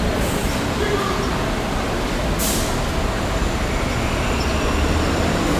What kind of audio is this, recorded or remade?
recorded